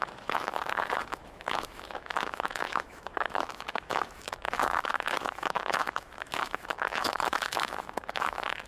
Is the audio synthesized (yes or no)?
yes